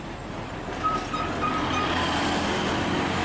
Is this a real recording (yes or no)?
yes